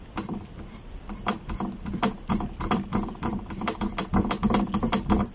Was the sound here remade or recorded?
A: remade